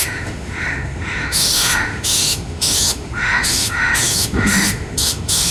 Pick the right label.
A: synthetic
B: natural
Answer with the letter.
A